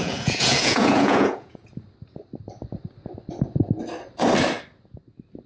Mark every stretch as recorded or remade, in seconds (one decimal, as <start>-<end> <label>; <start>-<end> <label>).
0.0-1.7 remade; 1.7-5.5 recorded